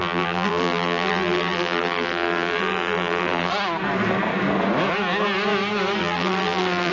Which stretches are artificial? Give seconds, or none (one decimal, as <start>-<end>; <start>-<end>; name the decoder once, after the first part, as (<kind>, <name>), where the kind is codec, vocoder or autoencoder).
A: 0.0-3.5 (vocoder, BigVGAN v2); 6.0-6.9